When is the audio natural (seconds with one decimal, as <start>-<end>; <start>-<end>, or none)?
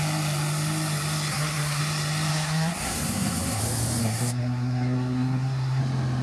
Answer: 0.0-1.3; 1.8-2.3; 3.6-4.0; 5.8-6.2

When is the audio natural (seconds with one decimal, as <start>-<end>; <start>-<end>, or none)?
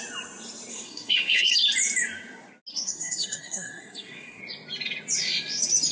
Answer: 0.0-0.7; 1.5-2.7; 4.4-5.9